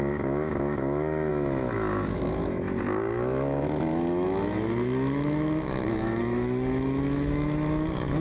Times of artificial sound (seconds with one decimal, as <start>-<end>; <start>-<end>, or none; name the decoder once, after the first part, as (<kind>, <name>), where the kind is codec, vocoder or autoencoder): 0.0-8.2 (autoencoder, DAC-VAE)